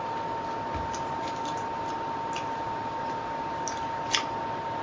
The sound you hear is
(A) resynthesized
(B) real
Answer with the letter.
B